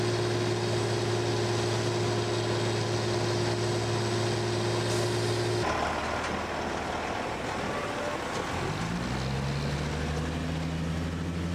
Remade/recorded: recorded